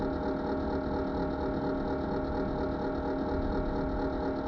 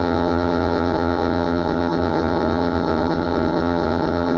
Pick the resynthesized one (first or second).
second